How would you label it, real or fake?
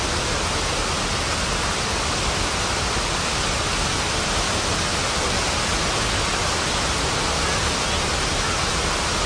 real